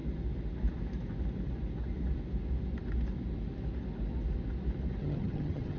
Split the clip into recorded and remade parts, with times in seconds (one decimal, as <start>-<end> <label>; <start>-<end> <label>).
0.0-5.0 recorded; 5.0-5.8 remade